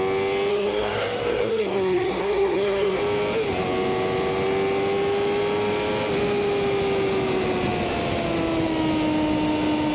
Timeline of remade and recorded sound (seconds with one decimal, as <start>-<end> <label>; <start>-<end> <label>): 0.0-0.5 recorded; 0.5-3.0 remade; 3.0-9.9 recorded